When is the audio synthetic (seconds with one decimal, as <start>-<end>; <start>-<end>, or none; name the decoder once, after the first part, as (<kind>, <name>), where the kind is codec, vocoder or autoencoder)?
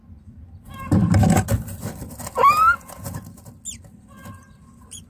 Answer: none